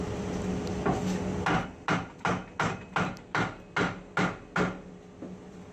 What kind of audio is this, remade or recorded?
recorded